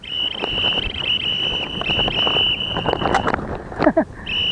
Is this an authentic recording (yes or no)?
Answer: yes